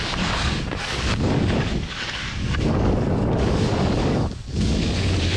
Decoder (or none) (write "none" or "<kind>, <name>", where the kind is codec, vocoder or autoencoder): codec, DAC